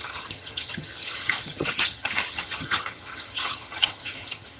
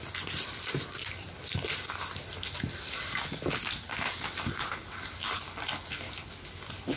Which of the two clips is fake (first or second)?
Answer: first